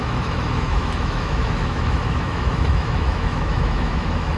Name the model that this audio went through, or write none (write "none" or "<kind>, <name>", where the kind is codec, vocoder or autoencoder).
autoencoder, DAC-VAE